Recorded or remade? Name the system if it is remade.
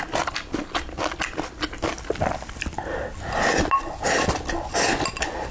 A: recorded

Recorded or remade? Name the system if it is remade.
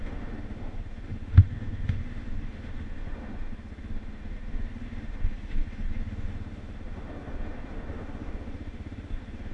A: remade, autoencoder, DAC-VAE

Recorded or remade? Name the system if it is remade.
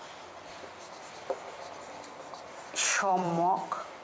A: remade, vocoder, BigVGAN v2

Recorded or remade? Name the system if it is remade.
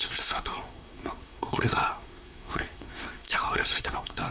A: remade, codec, SNAC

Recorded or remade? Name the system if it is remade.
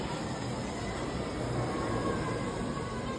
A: remade, vocoder, BigVGAN v2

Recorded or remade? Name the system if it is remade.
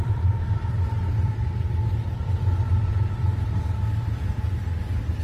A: remade, vocoder, BigVGAN v2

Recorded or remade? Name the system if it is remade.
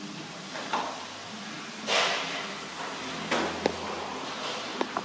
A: recorded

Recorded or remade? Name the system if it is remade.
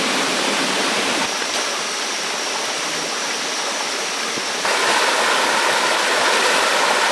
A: recorded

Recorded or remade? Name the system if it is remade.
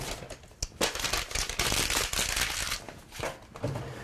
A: recorded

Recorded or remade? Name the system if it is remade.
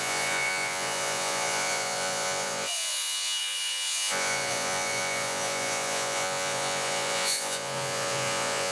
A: remade, vocoder, Vocos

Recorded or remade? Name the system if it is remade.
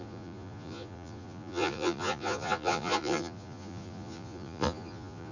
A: remade, vocoder, Vocos